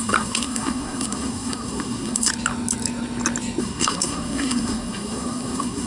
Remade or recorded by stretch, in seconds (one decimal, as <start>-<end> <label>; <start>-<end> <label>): 0.0-2.3 remade; 2.3-3.6 recorded; 3.6-5.9 remade